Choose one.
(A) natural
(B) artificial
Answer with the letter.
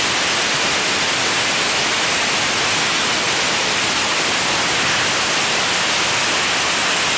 A